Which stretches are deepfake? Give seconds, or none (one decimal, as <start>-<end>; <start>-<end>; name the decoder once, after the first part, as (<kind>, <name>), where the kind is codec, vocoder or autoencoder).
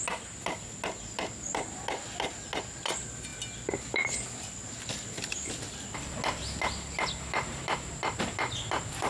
none